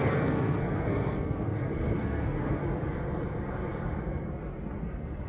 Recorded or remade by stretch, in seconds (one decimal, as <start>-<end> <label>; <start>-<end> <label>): 0.0-2.6 remade; 2.6-4.8 recorded; 4.8-5.3 remade